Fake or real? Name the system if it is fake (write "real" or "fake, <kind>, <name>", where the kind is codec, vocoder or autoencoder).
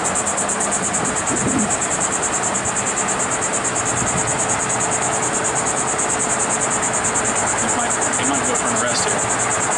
real